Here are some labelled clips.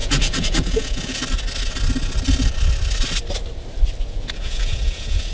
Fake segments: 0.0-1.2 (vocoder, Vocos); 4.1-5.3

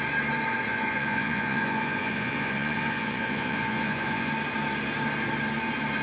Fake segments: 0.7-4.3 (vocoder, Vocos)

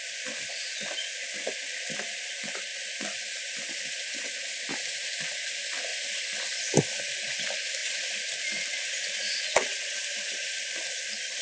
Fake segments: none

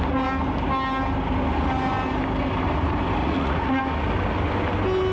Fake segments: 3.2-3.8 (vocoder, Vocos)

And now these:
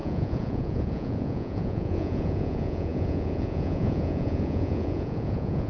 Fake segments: 0.0-5.7 (vocoder, Vocos)